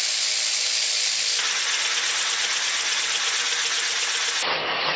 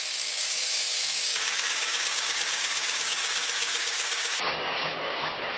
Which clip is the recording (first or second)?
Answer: first